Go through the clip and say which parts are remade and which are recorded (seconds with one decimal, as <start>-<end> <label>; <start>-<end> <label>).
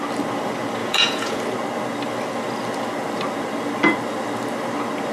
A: 0.0-0.8 recorded; 0.8-1.4 remade; 1.4-5.1 recorded